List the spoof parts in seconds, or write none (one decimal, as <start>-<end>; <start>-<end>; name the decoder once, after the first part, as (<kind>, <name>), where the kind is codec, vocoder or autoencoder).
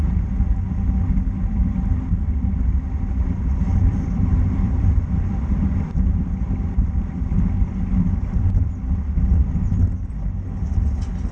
3.7-8.7 (vocoder, BigVGAN v2)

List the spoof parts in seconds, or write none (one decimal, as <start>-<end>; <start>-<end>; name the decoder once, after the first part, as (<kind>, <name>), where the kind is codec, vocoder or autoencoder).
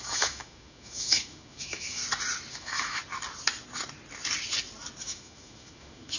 0.0-2.0 (autoencoder, DAC-VAE); 2.5-3.0; 5.0-6.2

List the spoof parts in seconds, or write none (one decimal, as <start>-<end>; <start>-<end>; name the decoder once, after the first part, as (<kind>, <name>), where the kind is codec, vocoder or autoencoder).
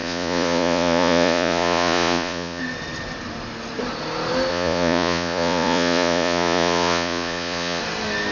0.0-2.6 (vocoder, Vocos); 4.5-7.8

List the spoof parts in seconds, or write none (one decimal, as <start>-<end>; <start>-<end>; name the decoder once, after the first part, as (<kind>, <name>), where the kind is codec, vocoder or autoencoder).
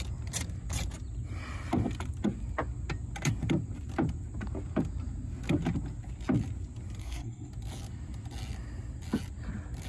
7.0-7.5 (codec, SNAC)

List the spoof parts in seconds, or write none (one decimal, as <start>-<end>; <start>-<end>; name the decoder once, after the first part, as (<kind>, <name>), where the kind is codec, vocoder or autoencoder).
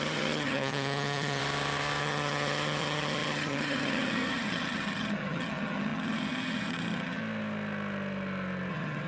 0.0-1.4 (vocoder, HiFi-GAN); 2.0-7.2; 8.7-9.1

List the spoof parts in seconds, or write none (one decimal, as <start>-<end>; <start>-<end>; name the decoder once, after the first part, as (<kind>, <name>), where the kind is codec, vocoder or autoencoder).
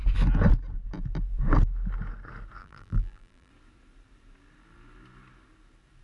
2.6-3.5 (vocoder, BigVGAN v2)